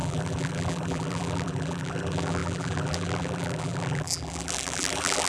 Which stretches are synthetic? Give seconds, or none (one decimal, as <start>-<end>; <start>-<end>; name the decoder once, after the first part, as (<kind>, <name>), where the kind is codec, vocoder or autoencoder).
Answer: 0.0-5.3 (vocoder, BigVGAN v2)